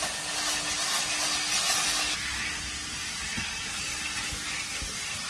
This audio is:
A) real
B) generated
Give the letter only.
A